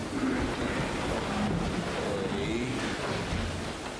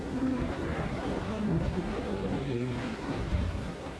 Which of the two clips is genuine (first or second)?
first